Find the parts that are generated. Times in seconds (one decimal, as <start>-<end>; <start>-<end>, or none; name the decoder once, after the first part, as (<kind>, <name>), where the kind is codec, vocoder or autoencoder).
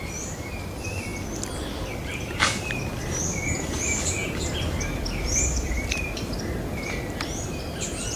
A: 0.0-1.1 (vocoder, BigVGAN v2); 1.9-8.2